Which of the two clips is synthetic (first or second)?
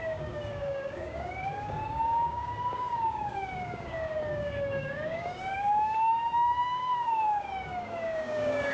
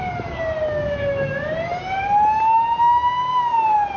first